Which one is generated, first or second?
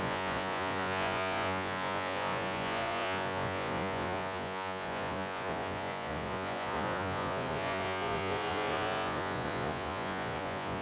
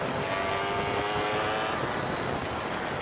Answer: first